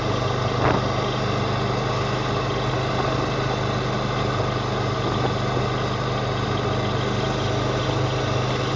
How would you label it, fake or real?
real